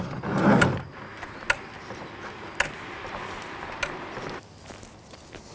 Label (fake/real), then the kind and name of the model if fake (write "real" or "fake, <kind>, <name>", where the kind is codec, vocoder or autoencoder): real